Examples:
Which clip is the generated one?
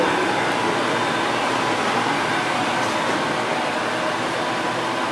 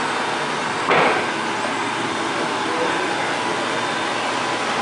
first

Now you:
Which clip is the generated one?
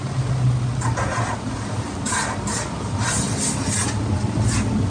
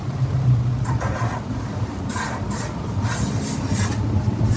second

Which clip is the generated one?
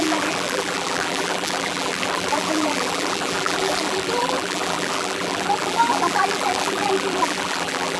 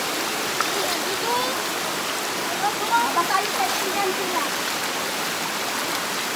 first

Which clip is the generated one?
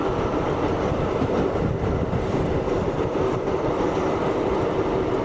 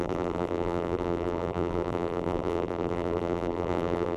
second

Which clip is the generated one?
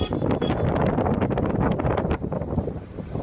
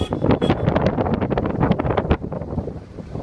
second